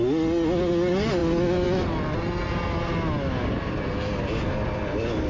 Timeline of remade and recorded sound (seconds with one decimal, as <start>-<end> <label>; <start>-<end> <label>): 0.0-5.3 recorded